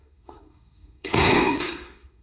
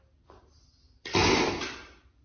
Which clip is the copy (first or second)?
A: first